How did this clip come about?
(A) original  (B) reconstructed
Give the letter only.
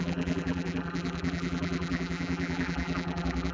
B